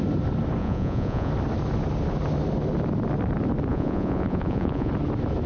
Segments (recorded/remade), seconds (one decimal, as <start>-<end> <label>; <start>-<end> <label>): 0.0-0.6 recorded; 0.6-1.3 remade; 1.3-3.7 recorded; 3.7-4.9 remade; 4.9-5.5 recorded